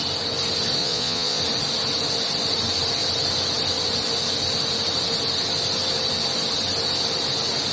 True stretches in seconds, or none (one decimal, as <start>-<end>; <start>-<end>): 0.0-0.8; 1.4-7.7